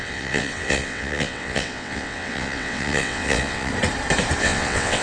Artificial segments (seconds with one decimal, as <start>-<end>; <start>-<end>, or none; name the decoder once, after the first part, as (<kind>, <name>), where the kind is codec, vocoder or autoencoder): 0.0-3.7 (vocoder, WaveNeXt); 4.4-5.0